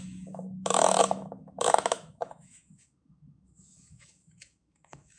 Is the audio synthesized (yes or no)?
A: yes